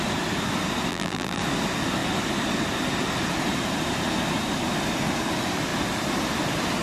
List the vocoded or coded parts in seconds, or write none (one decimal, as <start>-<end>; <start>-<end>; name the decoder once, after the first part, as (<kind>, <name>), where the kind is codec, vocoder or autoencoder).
0.9-1.4 (vocoder, BigVGAN v2)